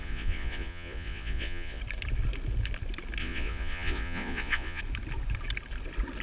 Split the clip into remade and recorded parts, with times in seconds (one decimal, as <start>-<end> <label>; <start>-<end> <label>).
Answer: 0.0-1.8 remade; 1.8-3.2 recorded; 3.2-4.8 remade; 4.8-6.2 recorded